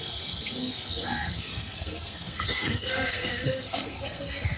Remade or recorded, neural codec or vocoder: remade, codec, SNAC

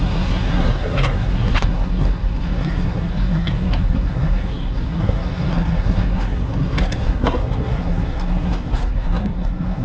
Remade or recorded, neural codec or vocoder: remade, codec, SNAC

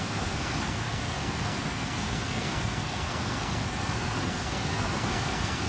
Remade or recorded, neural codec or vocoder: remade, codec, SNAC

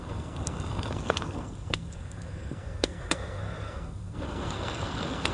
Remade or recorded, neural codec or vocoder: remade, codec, SNAC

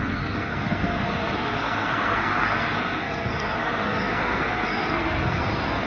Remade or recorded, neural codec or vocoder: remade, codec, SNAC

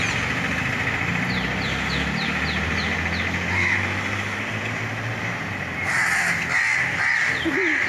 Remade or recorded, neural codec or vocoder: recorded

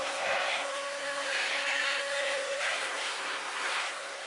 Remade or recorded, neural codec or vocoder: remade, codec, SNAC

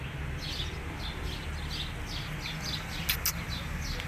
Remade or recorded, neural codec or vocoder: recorded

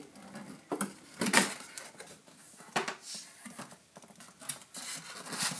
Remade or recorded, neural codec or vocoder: recorded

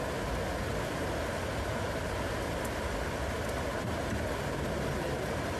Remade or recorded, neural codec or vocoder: recorded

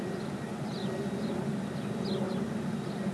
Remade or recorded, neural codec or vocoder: recorded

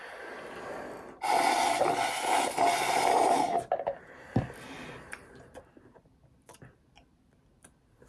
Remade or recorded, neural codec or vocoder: recorded